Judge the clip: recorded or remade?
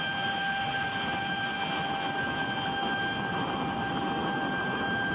recorded